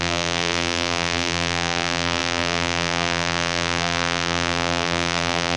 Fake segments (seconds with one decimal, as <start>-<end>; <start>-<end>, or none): 0.0-5.6